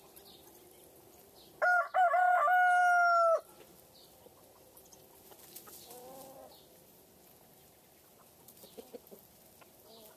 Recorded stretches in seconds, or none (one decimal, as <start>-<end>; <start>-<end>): 0.0-10.2